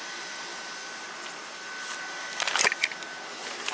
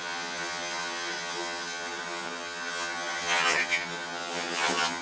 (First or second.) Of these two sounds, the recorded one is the first